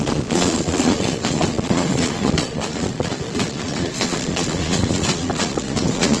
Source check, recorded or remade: remade